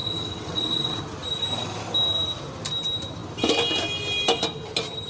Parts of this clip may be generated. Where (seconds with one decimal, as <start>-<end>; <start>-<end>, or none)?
0.0-1.0

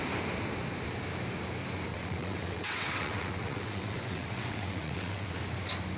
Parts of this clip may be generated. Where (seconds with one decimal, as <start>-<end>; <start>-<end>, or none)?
1.9-5.4